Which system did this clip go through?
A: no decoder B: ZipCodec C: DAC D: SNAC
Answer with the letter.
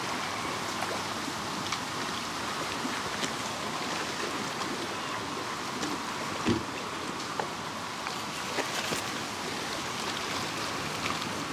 A